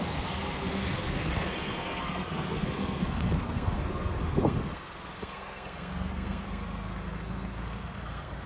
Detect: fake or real fake